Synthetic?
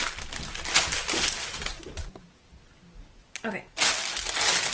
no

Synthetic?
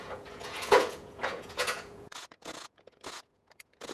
yes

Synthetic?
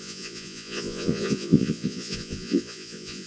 yes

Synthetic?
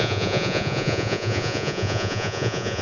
yes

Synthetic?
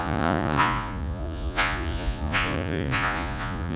yes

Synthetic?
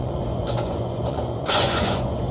yes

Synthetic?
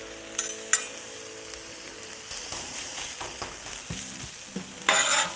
no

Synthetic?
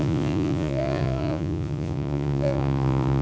yes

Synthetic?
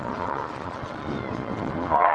yes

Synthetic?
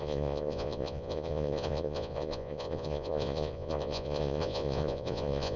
yes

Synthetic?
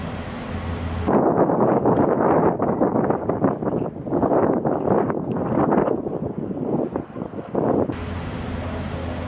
no